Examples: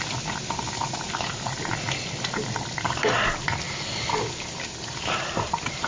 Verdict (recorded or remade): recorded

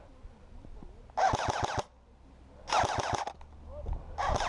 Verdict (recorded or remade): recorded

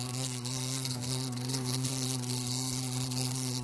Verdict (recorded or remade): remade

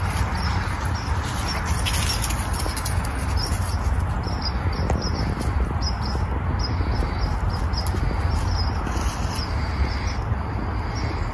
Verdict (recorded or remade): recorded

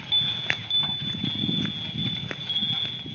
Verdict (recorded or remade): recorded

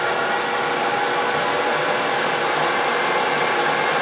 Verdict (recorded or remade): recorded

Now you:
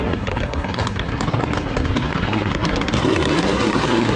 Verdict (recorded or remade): remade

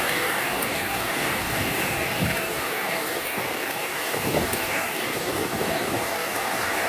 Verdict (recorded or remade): remade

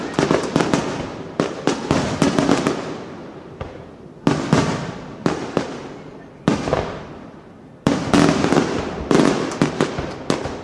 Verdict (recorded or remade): recorded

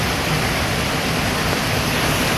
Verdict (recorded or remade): recorded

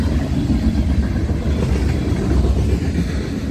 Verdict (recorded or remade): recorded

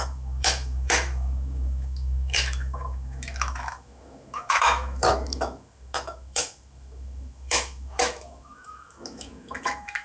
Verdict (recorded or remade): remade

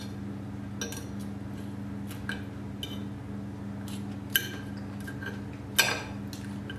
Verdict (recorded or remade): recorded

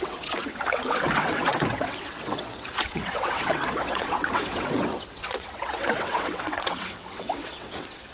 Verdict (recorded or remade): remade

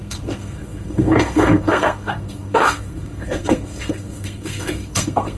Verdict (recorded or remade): remade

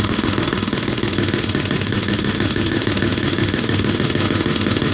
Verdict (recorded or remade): remade